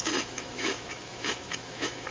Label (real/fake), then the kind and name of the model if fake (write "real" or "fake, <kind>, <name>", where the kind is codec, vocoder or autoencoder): fake, autoencoder, DAC-VAE